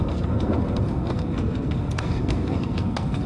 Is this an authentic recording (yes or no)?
no